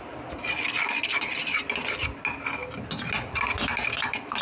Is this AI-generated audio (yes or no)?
no